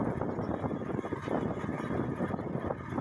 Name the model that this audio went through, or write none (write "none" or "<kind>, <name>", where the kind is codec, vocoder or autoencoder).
none